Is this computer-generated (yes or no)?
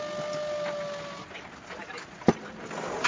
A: no